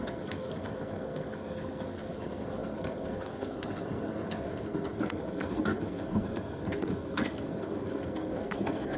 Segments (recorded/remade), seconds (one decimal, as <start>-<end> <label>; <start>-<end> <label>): 0.0-9.0 remade